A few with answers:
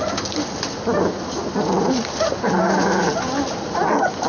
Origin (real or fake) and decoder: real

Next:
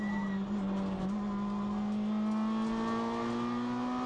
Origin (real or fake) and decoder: real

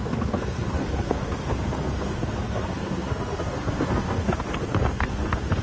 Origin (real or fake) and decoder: fake, codec, SNAC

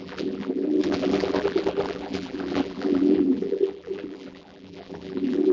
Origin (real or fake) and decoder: fake, vocoder, BigVGAN v2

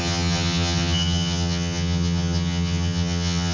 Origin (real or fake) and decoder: fake, vocoder, HiFi-GAN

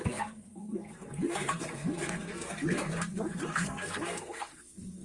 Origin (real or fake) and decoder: fake, codec, SNAC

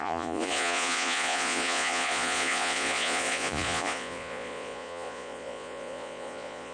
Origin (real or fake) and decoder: fake, vocoder, Vocos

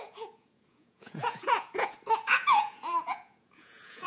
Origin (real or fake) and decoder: fake, vocoder, Vocos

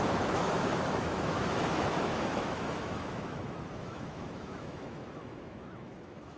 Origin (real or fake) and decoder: fake, autoencoder, DAC-VAE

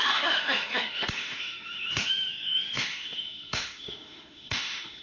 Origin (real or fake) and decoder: fake, autoencoder, DAC-VAE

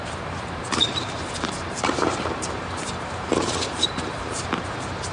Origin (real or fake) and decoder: fake, vocoder, BigVGAN v2